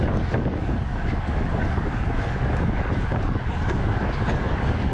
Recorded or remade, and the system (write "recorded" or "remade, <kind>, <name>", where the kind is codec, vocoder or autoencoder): remade, codec, DAC